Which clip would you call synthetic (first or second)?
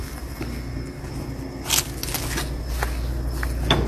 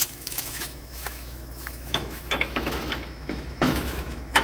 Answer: second